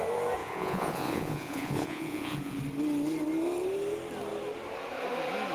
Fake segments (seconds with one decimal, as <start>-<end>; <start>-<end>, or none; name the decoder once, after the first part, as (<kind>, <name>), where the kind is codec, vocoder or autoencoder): 0.4-2.6 (vocoder, Vocos)